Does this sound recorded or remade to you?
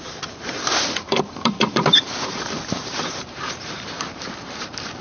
remade